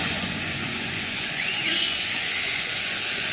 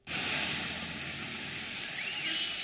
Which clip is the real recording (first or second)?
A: second